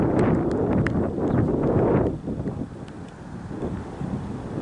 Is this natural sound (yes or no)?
yes